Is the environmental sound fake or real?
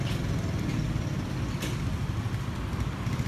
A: real